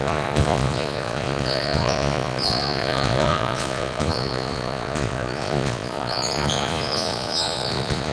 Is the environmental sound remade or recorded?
remade